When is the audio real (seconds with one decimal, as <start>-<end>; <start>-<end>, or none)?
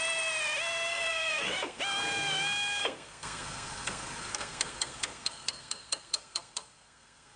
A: 0.0-0.9; 1.8-2.8